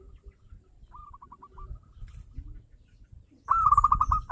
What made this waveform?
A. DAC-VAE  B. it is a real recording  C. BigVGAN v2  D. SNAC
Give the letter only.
B